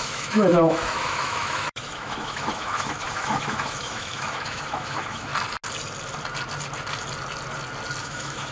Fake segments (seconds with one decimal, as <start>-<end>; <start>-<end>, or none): 0.0-5.3; 8.0-8.5